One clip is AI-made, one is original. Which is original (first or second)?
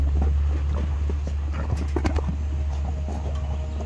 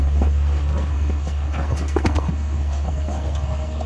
first